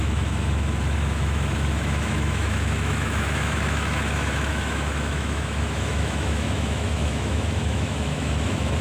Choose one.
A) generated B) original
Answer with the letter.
A